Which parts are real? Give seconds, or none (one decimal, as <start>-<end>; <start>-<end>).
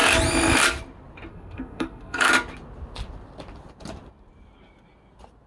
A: 0.0-1.3; 2.3-5.5